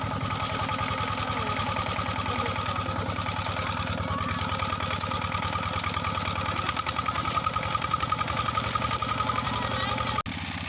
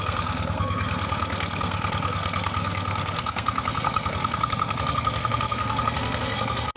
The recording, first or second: first